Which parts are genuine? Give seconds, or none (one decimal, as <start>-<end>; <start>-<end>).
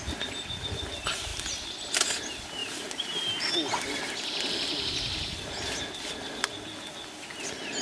0.0-2.6; 3.3-7.8